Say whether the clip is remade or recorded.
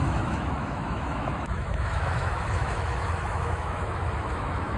remade